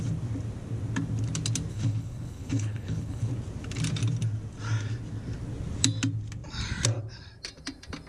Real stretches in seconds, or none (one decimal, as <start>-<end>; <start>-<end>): 0.0-1.7; 3.3-8.1